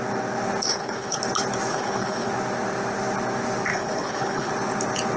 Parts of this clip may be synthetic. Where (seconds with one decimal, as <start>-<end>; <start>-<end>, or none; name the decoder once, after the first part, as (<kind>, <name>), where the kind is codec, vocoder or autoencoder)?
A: 0.7-1.2 (codec, HILCodec); 1.7-2.3; 3.7-4.5